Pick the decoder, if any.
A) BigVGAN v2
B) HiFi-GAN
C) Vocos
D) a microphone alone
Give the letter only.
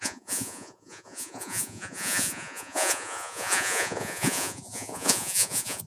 C